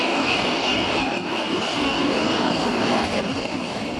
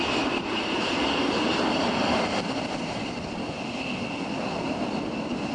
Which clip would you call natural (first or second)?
second